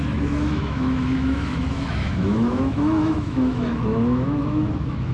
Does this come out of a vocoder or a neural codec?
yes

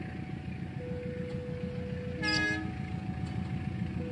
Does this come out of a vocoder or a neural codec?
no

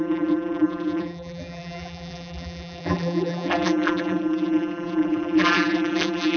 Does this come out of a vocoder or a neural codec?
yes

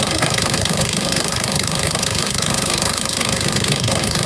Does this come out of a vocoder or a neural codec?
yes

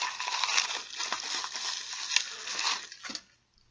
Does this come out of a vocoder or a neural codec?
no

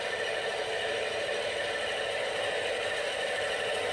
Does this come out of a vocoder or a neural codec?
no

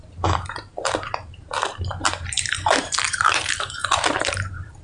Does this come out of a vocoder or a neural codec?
yes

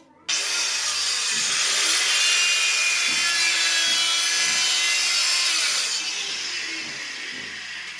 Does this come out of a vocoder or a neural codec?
no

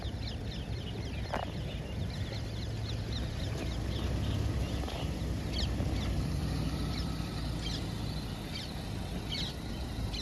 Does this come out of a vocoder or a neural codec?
no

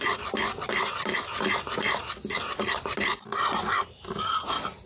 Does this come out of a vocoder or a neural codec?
no